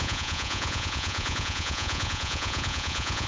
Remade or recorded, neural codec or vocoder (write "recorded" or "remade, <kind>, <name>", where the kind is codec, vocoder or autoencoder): remade, vocoder, Vocos